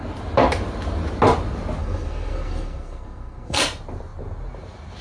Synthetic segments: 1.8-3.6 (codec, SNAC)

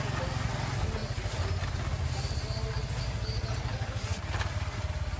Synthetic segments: none

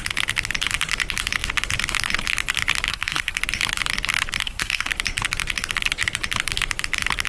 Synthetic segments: 2.9-3.4 (codec, SNAC); 4.4-4.9

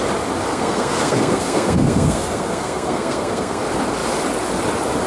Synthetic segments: 0.5-3.6 (codec, SNAC)

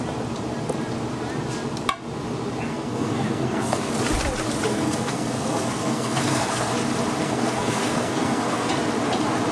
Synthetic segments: 2.7-3.9 (codec, SNAC); 4.7-6.7; 7.2-8.7

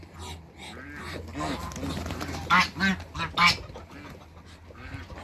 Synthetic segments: none